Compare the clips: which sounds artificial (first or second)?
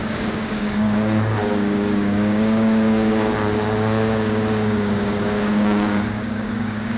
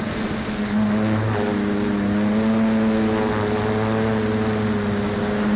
first